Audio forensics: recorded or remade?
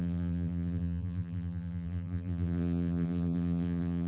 remade